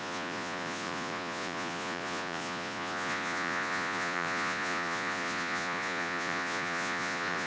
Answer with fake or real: fake